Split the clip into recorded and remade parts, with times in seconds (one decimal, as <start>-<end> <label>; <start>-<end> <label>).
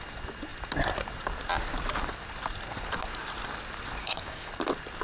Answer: 0.0-4.0 recorded; 4.0-4.5 remade; 4.5-5.0 recorded